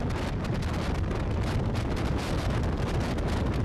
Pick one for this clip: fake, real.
real